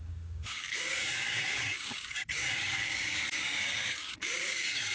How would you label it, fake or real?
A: fake